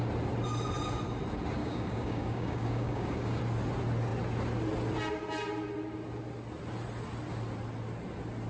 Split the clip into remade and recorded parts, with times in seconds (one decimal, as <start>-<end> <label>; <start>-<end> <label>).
0.0-1.6 recorded; 1.6-3.4 remade; 3.4-8.5 recorded